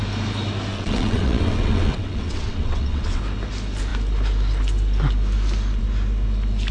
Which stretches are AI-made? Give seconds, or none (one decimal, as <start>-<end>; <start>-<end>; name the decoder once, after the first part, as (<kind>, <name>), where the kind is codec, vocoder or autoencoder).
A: 0.7-3.2 (vocoder, WaveNeXt)